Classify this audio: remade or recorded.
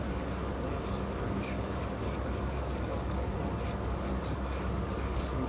remade